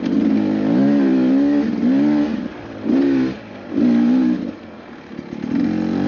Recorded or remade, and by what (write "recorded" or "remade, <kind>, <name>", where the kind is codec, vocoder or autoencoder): recorded